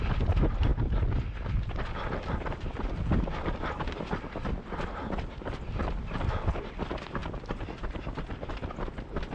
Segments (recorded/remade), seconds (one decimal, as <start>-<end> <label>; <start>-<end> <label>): 0.0-9.3 recorded